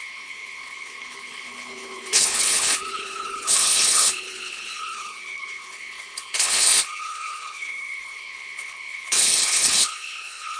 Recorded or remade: remade